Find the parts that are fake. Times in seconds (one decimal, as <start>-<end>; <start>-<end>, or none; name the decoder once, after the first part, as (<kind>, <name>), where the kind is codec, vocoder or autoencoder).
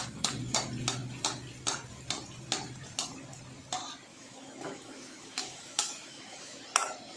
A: 4.1-6.6 (autoencoder, DAC-VAE)